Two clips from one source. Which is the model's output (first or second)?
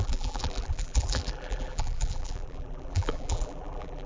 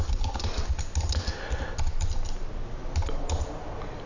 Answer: first